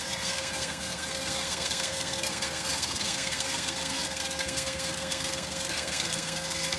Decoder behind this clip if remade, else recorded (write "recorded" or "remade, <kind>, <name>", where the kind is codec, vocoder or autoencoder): remade, codec, SNAC